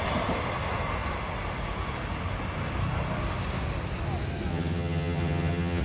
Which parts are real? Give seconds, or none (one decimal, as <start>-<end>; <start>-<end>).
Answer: 0.0-4.5